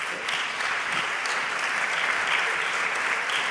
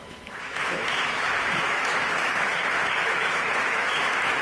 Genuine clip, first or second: first